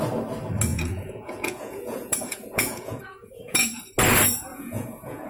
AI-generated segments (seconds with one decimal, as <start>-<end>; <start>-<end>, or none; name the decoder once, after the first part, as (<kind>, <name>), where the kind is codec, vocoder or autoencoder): 0.7-3.8 (vocoder, Vocos); 4.5-5.3